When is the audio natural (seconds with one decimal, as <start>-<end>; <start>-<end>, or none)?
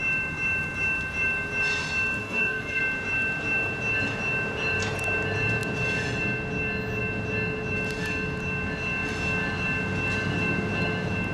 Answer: 0.0-2.2; 2.8-11.3